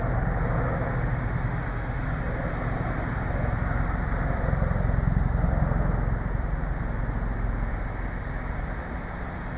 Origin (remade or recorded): recorded